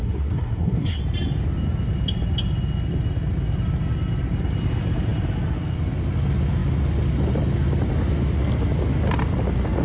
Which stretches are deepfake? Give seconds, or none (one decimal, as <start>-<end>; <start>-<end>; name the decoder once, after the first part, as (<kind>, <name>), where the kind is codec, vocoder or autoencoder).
0.0-1.0 (codec, SNAC)